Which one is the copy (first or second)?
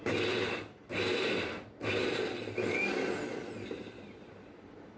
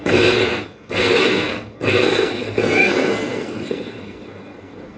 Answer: second